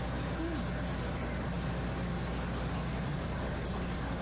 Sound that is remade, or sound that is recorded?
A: recorded